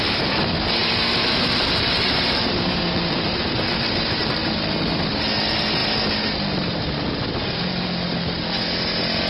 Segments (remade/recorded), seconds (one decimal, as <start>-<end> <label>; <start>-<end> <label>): 0.0-0.8 recorded; 0.8-5.3 remade; 5.3-9.3 recorded